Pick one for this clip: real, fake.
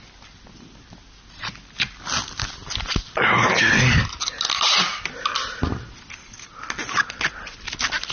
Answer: real